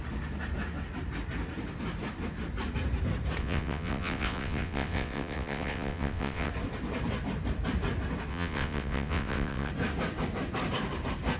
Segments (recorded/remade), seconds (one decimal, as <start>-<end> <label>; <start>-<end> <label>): 0.0-3.4 recorded; 3.4-6.5 remade; 6.5-8.3 recorded; 8.3-9.7 remade; 9.7-11.4 recorded